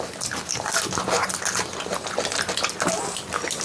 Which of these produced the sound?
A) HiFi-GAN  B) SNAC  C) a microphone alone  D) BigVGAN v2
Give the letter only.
C